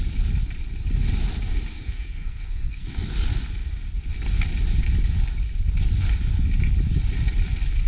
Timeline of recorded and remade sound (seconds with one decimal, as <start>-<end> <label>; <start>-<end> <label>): 0.0-1.8 recorded; 1.8-3.1 remade; 3.1-7.9 recorded